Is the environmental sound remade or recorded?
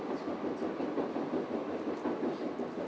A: recorded